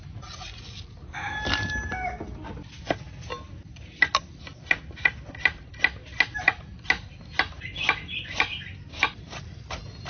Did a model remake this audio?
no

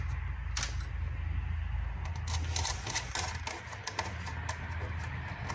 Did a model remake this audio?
no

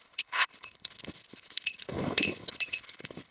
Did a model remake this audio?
yes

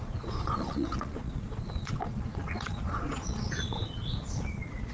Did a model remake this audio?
yes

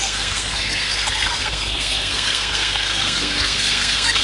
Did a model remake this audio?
yes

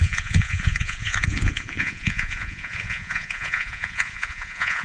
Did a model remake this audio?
yes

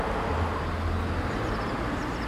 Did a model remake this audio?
no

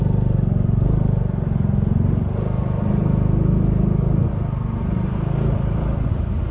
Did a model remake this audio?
no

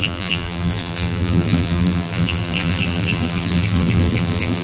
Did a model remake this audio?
yes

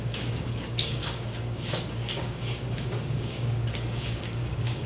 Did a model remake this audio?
yes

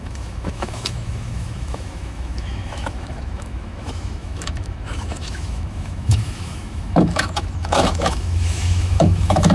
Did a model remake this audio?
yes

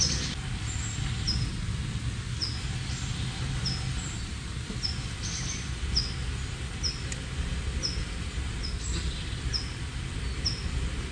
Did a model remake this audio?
no